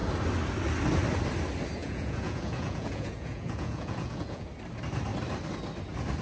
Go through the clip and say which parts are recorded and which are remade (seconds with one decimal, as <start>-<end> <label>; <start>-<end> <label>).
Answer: 0.0-1.8 recorded; 1.8-4.5 remade; 4.5-6.2 recorded